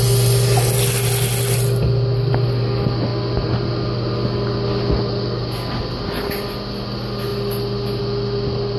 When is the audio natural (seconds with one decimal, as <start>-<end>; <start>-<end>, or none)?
0.0-8.8